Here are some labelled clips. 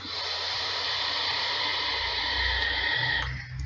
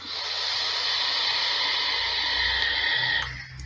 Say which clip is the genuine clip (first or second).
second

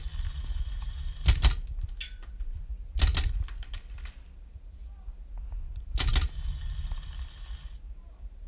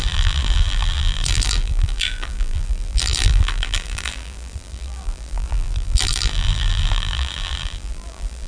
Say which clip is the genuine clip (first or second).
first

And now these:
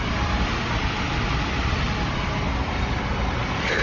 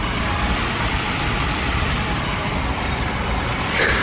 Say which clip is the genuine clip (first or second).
first